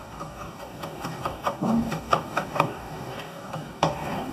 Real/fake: fake